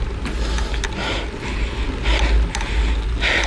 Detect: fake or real real